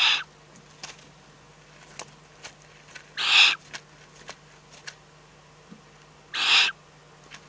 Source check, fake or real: real